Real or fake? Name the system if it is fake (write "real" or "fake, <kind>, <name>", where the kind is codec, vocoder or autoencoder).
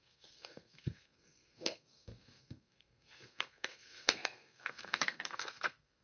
fake, codec, SNAC